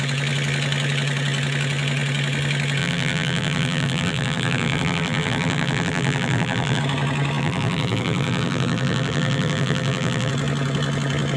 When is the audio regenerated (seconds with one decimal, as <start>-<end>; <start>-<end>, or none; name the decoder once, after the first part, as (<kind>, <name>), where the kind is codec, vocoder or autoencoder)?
2.8-6.8 (vocoder, BigVGAN v2); 7.4-10.3